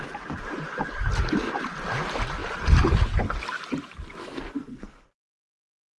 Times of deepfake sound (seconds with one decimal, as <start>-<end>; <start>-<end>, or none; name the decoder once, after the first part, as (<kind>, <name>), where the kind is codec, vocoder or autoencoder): 4.2-5.5 (codec, SNAC)